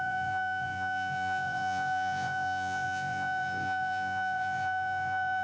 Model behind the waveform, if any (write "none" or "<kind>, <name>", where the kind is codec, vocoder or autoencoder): vocoder, Vocos